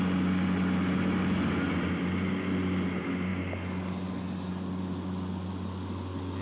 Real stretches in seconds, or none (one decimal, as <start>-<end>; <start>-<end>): 0.0-6.4